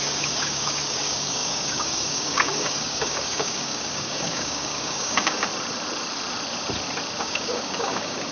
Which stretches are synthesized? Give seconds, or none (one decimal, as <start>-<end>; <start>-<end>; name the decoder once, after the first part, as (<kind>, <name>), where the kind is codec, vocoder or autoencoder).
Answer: 0.0-5.5 (codec, DAC); 7.2-8.3

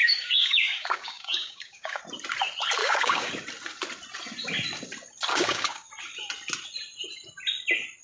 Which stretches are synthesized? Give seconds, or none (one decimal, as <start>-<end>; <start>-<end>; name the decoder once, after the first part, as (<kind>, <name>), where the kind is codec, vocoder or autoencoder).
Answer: 0.0-2.0 (codec, DAC); 2.8-3.3; 5.3-5.9

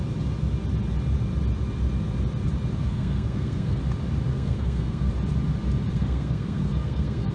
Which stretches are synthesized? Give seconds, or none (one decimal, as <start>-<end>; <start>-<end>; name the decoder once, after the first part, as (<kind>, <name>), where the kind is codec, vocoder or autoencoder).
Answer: 2.8-3.8 (codec, SNAC); 4.3-5.1; 5.9-7.3

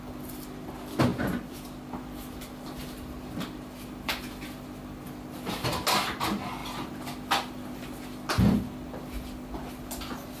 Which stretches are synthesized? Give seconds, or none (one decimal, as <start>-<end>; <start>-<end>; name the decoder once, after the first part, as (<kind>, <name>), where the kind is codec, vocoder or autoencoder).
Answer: none